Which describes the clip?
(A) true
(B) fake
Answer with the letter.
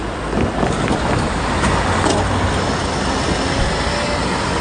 A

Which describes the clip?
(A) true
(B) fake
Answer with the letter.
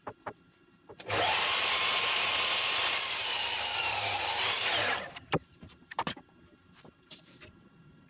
B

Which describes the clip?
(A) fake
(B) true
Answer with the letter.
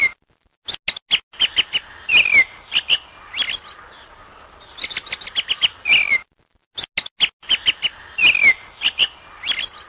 B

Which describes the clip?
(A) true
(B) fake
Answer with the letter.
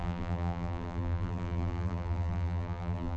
B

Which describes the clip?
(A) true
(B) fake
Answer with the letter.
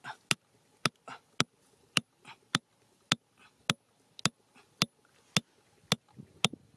A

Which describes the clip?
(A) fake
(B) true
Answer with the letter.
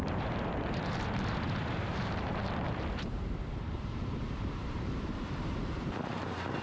A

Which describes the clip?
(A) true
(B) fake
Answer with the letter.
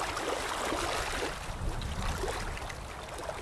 A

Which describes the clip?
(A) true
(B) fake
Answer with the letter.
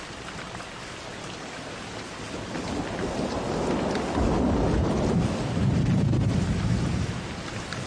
A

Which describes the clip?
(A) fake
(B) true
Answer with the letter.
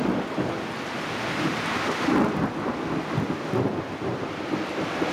B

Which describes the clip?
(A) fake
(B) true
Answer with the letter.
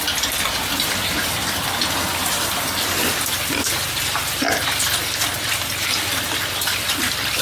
B